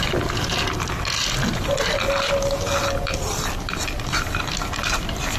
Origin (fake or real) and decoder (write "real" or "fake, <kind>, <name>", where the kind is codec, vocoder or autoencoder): real